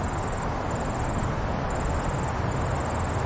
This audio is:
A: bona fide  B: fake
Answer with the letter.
A